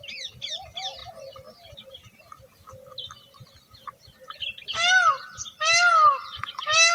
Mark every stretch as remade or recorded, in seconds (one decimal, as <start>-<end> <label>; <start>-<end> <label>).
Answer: 0.0-6.9 recorded